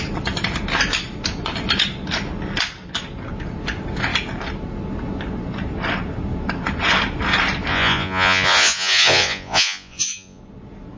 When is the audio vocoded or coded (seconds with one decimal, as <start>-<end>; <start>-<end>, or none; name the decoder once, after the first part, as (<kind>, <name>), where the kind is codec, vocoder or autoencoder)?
7.7-10.4 (vocoder, Vocos)